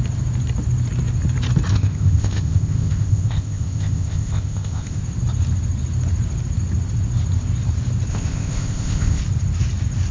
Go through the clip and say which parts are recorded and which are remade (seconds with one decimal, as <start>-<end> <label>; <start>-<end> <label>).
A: 0.0-1.7 recorded; 1.7-5.0 remade; 5.0-8.1 recorded; 8.1-9.2 remade; 9.2-10.1 recorded